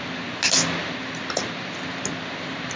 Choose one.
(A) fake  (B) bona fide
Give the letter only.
B